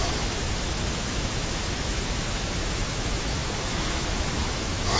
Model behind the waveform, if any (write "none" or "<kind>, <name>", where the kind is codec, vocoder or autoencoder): autoencoder, DAC-VAE